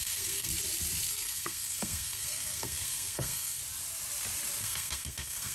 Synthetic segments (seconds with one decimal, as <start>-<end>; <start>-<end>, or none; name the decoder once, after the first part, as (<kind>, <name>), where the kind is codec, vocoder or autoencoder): 0.0-0.5 (codec, SNAC); 1.1-3.6; 4.6-5.5